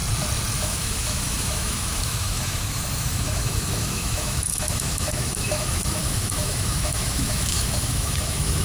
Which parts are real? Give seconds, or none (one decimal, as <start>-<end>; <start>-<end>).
0.0-0.6